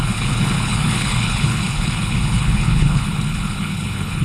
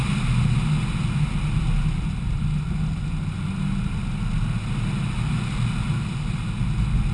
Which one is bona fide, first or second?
second